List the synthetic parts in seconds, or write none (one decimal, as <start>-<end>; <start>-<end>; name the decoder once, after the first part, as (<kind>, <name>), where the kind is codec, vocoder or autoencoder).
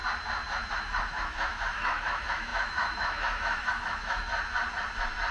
0.7-4.3 (autoencoder, DAC-VAE)